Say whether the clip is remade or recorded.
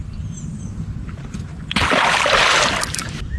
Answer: recorded